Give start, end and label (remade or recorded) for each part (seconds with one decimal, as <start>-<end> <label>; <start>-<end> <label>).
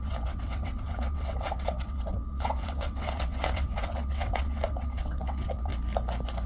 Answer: 0.0-5.7 remade; 5.7-6.5 recorded